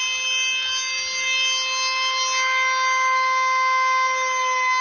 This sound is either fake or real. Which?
real